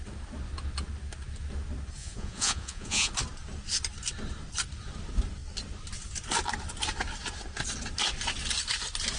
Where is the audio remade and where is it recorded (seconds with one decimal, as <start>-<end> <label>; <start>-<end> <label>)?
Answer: 0.0-2.0 recorded; 2.0-3.1 remade; 3.1-9.2 recorded